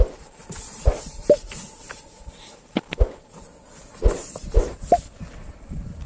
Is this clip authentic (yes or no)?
yes